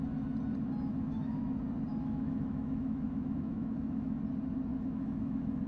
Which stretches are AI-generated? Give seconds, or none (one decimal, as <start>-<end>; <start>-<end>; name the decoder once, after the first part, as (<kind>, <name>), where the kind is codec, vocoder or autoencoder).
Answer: 0.9-1.4 (autoencoder, DAC-VAE); 1.9-4.2; 4.7-5.7